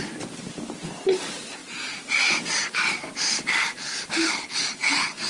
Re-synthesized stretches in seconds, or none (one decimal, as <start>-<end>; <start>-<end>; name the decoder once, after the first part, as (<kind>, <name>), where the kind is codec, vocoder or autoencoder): 4.2-5.3 (codec, HILCodec)